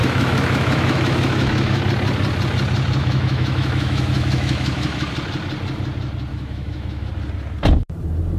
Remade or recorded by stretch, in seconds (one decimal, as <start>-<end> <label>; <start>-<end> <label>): 0.0-1.8 remade; 1.8-3.0 recorded; 3.0-5.1 remade; 5.1-6.3 recorded; 6.3-7.1 remade; 7.1-8.4 recorded